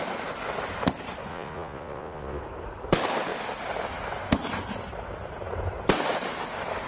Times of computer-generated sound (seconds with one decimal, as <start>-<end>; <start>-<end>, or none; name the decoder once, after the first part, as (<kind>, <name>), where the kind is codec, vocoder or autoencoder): 1.3-2.4 (vocoder, Vocos)